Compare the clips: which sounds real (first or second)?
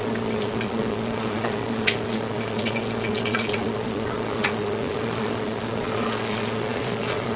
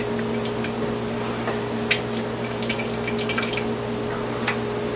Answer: second